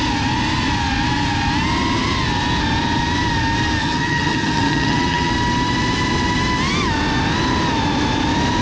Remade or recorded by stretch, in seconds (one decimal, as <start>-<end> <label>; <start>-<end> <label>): 0.0-3.8 recorded; 3.8-5.3 remade; 5.3-8.6 recorded